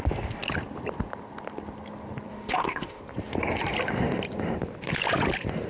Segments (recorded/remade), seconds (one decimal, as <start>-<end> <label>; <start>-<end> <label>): 0.0-2.3 recorded; 2.3-3.0 remade; 3.0-5.7 recorded